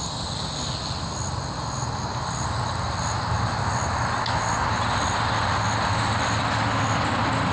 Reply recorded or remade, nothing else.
recorded